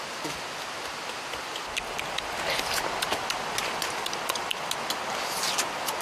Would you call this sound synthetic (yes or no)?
no